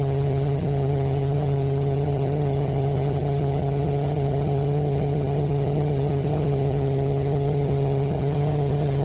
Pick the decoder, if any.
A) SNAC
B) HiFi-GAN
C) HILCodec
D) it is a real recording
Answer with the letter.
B